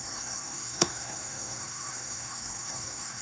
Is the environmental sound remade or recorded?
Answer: remade